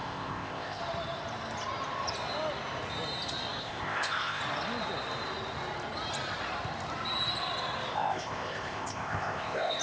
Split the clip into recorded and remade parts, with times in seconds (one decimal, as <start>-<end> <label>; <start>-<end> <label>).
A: 0.0-0.8 remade; 0.8-3.6 recorded; 3.6-4.4 remade; 4.4-7.9 recorded; 7.9-9.8 remade